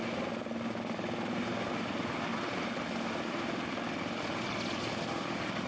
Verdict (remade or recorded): recorded